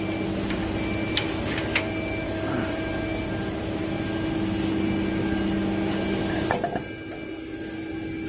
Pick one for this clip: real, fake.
real